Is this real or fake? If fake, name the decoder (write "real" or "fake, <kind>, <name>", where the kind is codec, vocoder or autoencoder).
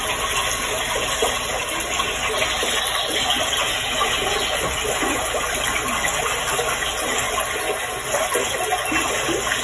real